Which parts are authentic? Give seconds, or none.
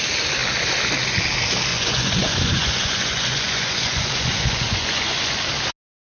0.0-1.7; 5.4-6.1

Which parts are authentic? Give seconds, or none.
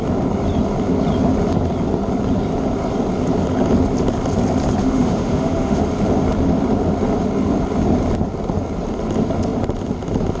0.0-4.8; 5.8-10.4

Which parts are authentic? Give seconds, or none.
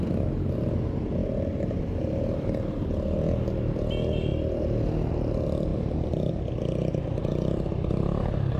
0.0-8.6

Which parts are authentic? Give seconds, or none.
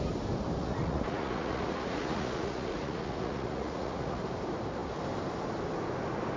0.0-0.6; 4.2-6.4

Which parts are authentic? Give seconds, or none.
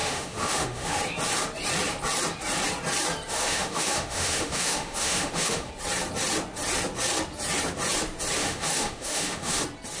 1.0-3.3; 5.7-8.4; 9.6-10.0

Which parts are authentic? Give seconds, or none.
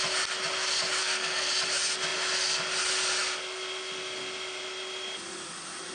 0.0-1.0; 1.5-5.9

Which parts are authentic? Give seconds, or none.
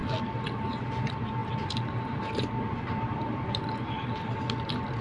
0.0-1.4; 4.4-5.0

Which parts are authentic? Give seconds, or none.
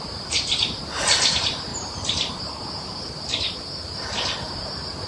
none